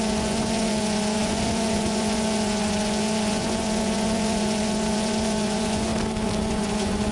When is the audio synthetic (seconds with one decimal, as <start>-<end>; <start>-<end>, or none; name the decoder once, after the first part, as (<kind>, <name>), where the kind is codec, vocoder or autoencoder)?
0.0-5.9 (vocoder, Vocos); 6.5-7.1